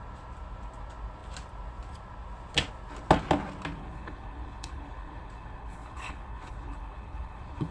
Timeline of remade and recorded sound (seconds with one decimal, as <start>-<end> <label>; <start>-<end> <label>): 0.0-3.8 recorded; 3.8-7.7 remade

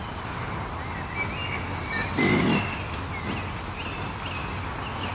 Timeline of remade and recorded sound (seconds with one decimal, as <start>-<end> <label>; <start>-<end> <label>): 0.0-5.1 recorded